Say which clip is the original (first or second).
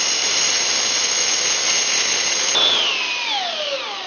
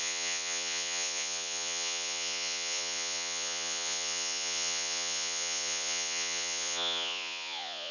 first